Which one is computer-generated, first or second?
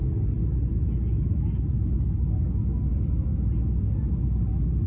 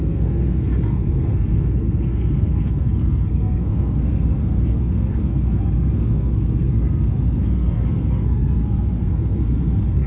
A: second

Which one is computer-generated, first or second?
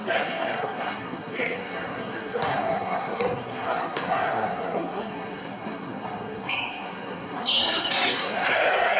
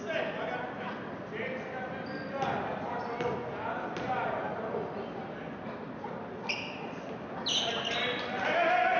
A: first